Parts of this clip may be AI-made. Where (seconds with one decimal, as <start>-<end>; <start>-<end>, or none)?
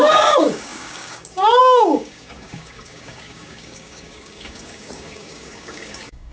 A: 0.0-6.3